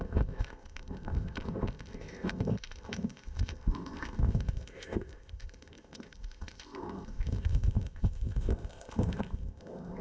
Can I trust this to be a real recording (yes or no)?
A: no